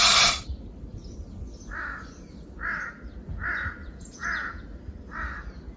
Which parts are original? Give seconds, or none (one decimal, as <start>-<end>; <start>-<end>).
0.0-3.8; 4.6-5.8